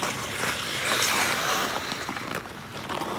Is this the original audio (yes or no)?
yes